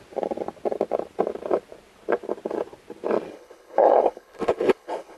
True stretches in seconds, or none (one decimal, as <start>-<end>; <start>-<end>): 0.0-3.3

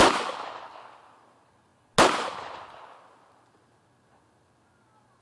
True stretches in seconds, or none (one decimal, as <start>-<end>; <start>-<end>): 0.0-5.2

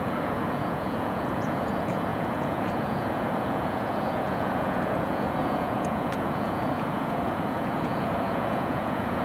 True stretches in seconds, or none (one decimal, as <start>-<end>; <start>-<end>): none

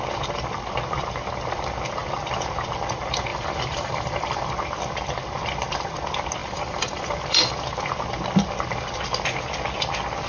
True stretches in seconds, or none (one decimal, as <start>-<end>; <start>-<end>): 0.0-3.3; 4.5-6.4; 7.5-10.3

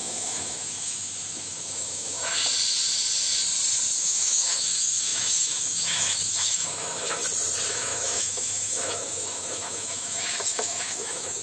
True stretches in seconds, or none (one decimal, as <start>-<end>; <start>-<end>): 2.4-4.0; 7.2-7.7

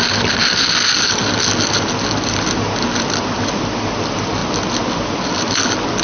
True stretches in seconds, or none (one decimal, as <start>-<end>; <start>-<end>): 0.4-2.0; 4.4-5.1

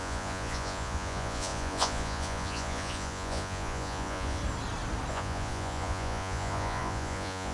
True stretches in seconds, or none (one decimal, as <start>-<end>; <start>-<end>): 4.4-5.1

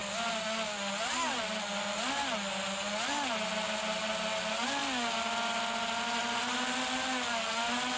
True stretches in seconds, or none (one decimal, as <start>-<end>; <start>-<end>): 0.0-8.0